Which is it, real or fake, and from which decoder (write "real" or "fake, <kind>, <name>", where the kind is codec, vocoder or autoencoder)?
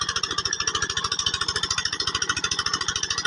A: real